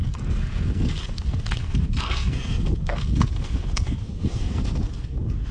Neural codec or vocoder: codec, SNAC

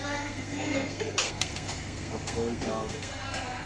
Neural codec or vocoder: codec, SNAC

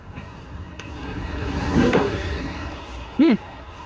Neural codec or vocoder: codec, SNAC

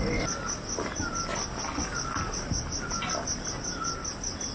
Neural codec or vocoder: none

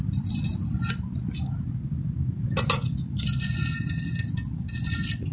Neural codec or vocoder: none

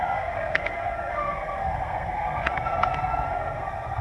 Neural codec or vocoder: codec, SNAC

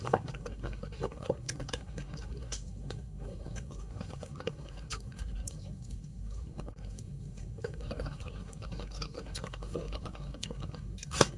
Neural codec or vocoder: codec, SNAC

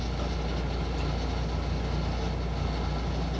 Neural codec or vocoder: none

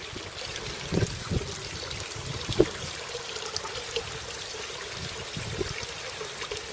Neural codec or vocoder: none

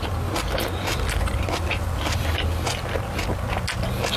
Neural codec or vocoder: none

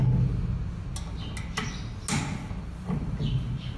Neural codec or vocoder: none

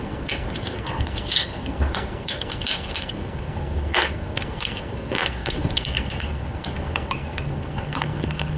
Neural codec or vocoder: codec, SNAC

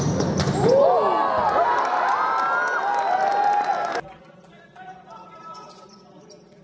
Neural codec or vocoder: none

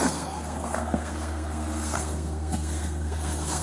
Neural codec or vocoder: codec, SNAC